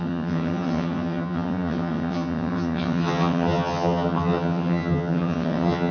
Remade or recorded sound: remade